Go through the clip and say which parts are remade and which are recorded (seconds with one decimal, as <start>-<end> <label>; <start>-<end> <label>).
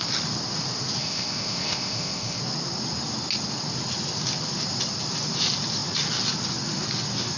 0.0-1.0 recorded; 1.0-2.4 remade; 2.4-7.4 recorded